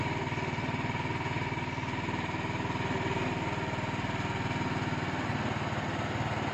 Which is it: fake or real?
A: real